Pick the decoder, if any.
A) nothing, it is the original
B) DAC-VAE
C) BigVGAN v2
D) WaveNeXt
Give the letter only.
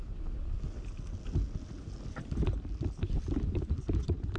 A